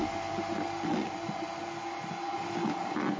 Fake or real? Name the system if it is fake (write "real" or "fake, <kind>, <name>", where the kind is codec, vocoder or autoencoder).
real